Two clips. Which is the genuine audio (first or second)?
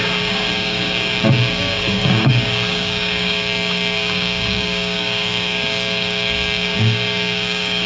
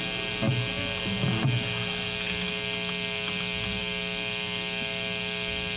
second